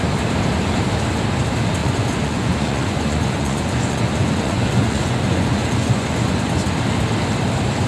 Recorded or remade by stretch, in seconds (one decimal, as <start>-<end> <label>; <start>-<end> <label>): 0.0-1.8 recorded; 1.8-6.5 remade; 6.5-7.9 recorded